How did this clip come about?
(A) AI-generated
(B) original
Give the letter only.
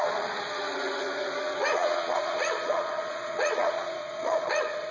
A